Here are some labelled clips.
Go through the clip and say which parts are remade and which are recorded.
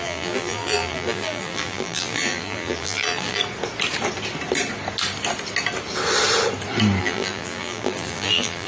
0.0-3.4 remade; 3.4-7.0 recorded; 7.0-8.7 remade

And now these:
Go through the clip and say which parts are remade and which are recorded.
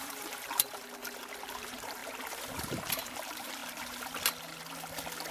0.0-1.0 remade; 1.0-1.5 recorded; 1.5-2.0 remade; 2.0-3.0 recorded; 3.0-3.6 remade; 3.6-5.3 recorded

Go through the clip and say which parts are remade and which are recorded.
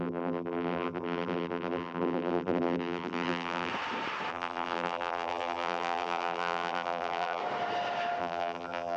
0.0-3.7 remade; 3.7-4.3 recorded; 4.3-7.4 remade; 7.4-8.2 recorded; 8.2-9.0 remade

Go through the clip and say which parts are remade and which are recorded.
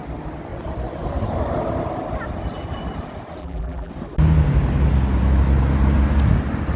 0.0-3.4 recorded; 3.4-3.9 remade; 3.9-6.8 recorded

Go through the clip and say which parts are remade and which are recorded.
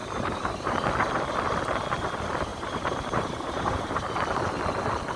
0.0-0.9 remade; 0.9-2.5 recorded; 2.5-4.0 remade; 4.0-5.2 recorded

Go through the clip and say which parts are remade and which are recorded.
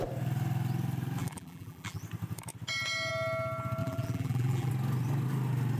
0.0-1.2 recorded; 1.2-2.0 remade; 2.0-3.8 recorded; 3.8-4.7 remade; 4.7-5.8 recorded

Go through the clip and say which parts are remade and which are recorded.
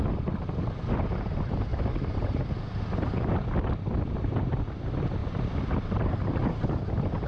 0.0-1.7 recorded; 1.7-2.5 remade; 2.5-5.2 recorded; 5.2-7.3 remade